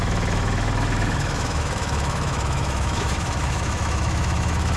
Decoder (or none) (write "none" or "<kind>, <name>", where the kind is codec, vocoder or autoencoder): autoencoder, DAC-VAE